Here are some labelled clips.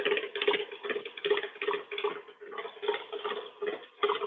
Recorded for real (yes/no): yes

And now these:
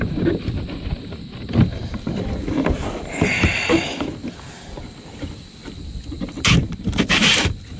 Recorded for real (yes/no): yes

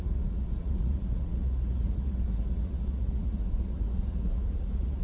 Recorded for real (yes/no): no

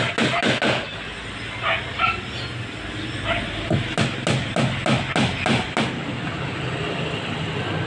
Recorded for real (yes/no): yes